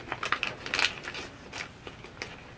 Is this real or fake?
real